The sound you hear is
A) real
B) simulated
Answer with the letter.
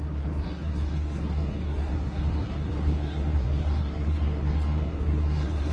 B